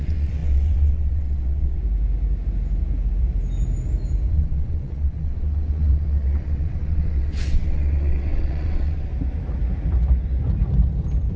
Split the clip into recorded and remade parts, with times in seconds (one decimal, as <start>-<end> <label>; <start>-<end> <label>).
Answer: 0.0-1.8 remade; 1.8-4.3 recorded; 4.3-9.1 remade; 9.1-11.4 recorded